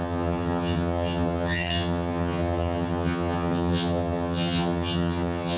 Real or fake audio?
fake